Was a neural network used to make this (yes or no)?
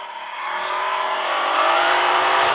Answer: yes